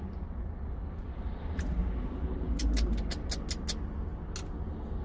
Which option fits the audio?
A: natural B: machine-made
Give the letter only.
A